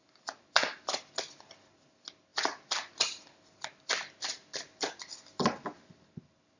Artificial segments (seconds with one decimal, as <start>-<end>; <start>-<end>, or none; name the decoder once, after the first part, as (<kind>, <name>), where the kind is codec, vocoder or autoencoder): none